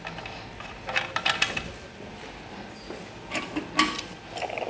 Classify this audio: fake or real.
real